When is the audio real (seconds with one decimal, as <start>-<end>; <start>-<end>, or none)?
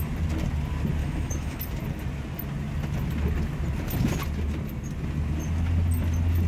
0.0-1.0; 1.6-6.5